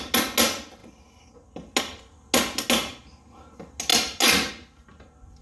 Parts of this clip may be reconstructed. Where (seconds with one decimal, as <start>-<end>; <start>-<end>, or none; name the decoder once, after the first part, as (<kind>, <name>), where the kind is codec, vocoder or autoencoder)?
none